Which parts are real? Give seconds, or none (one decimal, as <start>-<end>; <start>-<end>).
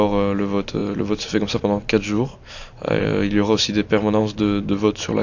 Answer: 0.0-5.2